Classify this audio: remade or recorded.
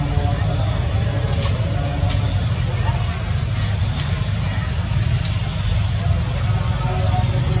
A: recorded